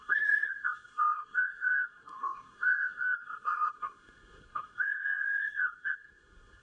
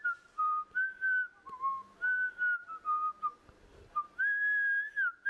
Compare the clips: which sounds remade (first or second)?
first